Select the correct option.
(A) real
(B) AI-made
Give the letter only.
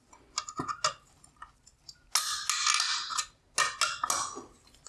A